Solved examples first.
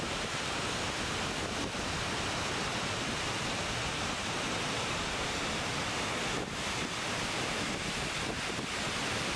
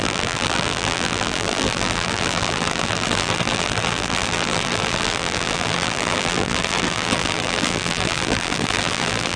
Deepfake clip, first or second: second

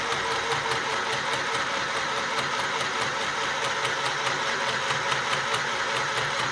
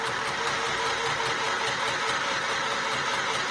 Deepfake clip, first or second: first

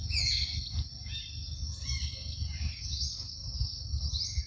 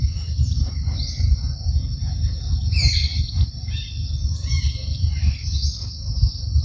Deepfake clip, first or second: second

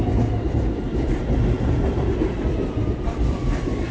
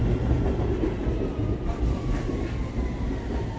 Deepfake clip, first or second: first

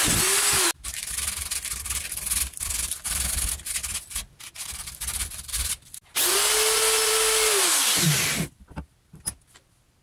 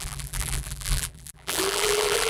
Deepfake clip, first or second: second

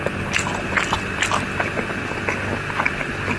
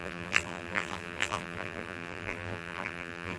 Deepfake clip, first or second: second